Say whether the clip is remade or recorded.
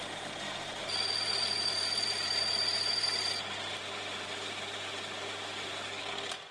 recorded